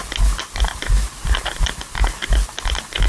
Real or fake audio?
real